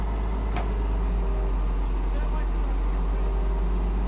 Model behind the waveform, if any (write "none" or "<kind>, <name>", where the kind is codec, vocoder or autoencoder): none